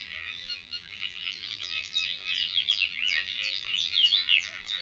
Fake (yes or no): yes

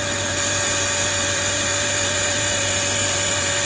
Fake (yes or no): yes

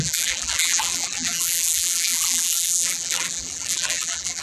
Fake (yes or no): yes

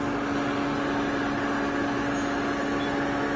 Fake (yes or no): no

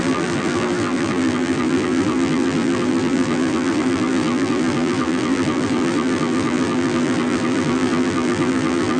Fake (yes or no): yes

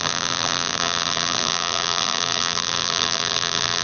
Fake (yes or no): yes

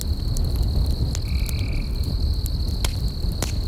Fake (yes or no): no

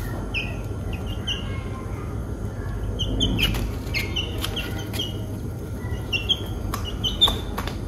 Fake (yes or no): no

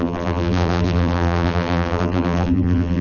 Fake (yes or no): yes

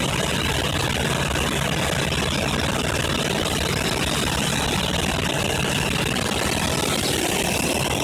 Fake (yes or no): no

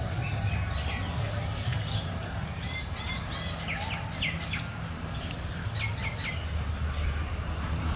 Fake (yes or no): no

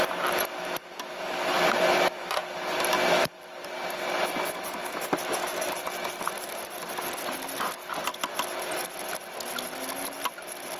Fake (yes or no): no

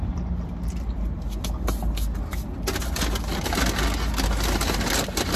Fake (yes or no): no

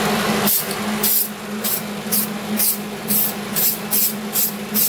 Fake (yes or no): no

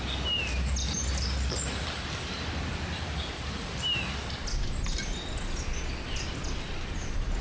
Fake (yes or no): no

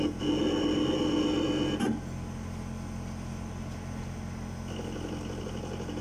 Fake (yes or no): no